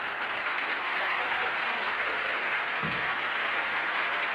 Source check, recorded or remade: remade